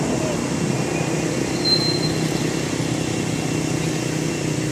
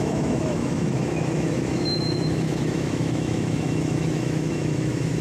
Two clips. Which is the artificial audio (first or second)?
second